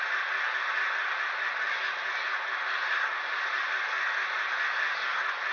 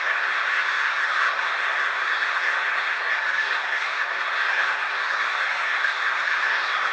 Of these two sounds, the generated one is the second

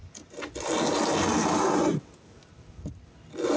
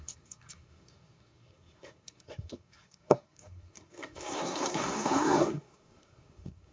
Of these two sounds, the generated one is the second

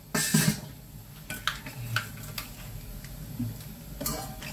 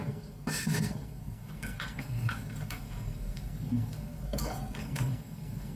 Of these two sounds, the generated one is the second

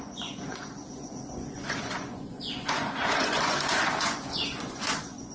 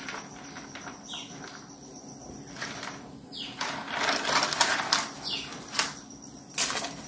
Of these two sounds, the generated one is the first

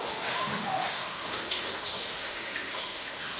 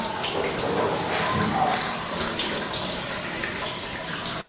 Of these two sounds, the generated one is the first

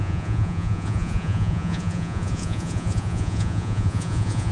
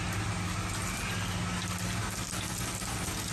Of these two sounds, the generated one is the first